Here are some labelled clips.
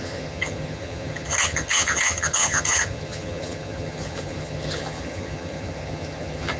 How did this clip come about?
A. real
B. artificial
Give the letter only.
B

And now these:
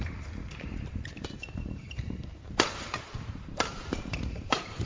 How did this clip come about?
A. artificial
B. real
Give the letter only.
A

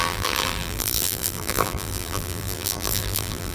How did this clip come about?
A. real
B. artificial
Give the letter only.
B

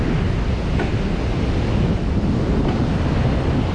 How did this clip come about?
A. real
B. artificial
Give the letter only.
A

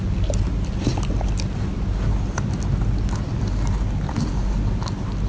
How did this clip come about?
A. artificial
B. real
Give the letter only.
B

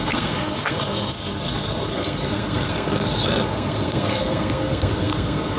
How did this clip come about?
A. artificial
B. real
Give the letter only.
A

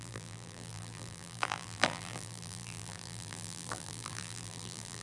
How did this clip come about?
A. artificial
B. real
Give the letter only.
A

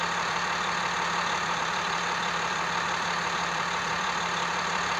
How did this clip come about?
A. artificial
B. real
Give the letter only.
A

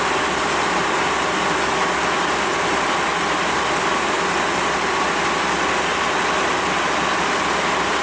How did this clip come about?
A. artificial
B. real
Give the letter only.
B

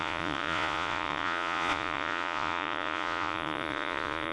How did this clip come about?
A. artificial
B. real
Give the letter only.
A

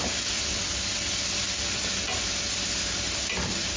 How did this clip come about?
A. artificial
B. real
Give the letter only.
B